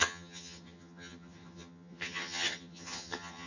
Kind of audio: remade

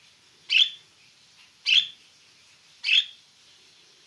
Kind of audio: recorded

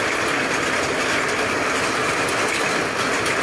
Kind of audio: recorded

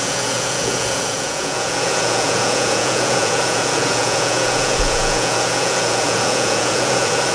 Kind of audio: remade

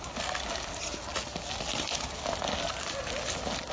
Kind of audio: recorded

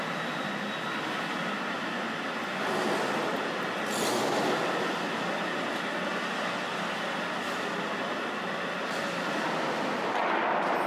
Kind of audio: recorded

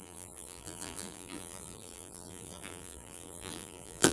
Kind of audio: remade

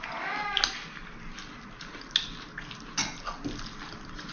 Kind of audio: recorded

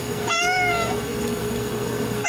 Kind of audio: remade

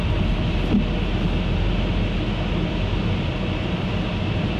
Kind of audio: recorded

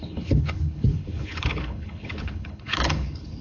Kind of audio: remade